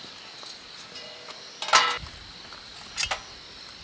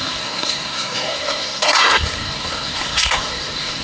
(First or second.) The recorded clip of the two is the first